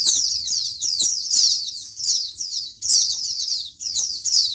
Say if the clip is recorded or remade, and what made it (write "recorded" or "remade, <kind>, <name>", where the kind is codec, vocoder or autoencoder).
remade, vocoder, WaveNeXt